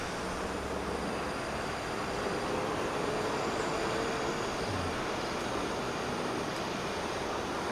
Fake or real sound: real